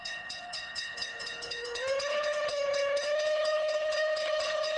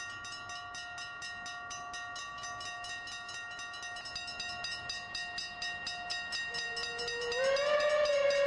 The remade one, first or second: first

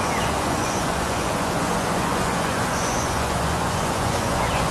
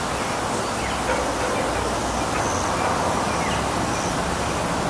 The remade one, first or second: first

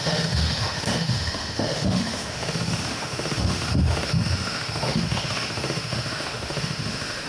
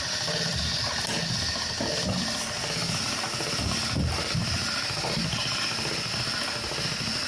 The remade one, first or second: first